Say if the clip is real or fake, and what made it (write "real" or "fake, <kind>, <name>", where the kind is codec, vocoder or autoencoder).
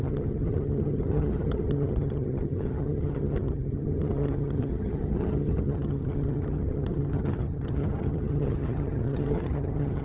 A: fake, vocoder, HiFi-GAN